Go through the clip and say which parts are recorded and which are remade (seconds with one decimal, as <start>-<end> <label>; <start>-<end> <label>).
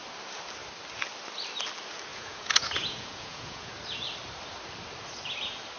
0.0-2.1 recorded; 2.1-3.7 remade; 3.7-5.8 recorded